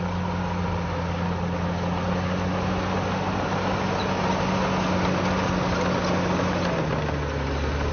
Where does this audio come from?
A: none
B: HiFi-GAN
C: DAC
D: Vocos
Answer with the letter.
A